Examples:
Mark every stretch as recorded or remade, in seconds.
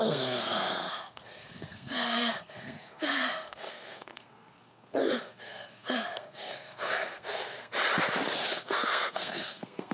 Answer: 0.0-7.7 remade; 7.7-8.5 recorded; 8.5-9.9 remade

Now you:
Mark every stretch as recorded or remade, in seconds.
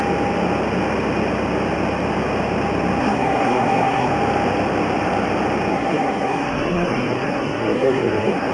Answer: 0.0-3.0 recorded; 3.0-4.1 remade; 4.1-5.7 recorded; 5.7-8.5 remade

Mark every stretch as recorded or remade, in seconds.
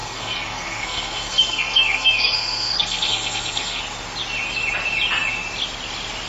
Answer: 0.0-3.8 remade; 3.8-6.3 recorded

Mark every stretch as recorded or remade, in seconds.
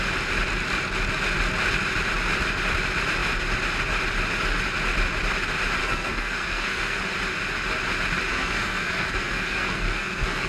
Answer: 0.0-5.8 recorded; 5.8-7.0 remade; 7.0-8.3 recorded; 8.3-10.5 remade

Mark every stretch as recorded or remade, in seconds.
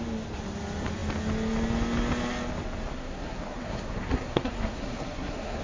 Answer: 0.0-2.9 recorded; 2.9-5.6 remade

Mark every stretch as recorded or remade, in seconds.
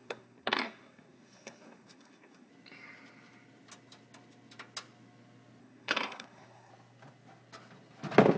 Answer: 0.0-2.5 remade; 2.5-5.6 recorded; 5.6-6.7 remade; 6.7-8.4 recorded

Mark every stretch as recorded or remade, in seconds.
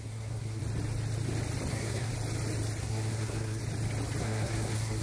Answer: 0.0-0.6 remade; 0.6-1.7 recorded; 1.7-2.1 remade; 2.1-2.8 recorded; 2.8-3.6 remade; 3.6-4.2 recorded; 4.2-5.0 remade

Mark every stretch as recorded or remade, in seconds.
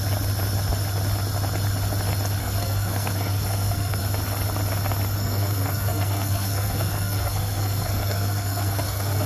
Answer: 0.0-2.4 recorded; 2.4-4.0 remade; 4.0-5.2 recorded; 5.2-9.3 remade